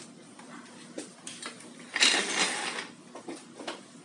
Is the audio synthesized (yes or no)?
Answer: no